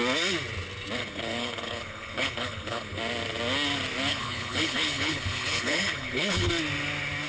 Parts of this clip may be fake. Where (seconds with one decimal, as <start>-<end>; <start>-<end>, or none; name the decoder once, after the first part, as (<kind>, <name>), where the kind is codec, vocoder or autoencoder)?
1.0-3.0 (codec, HILCodec); 4.1-6.5